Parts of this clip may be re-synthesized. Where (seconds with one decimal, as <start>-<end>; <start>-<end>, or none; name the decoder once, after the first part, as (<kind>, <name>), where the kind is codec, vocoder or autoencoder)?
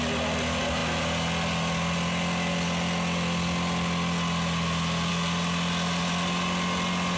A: none